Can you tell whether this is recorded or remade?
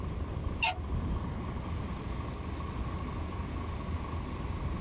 recorded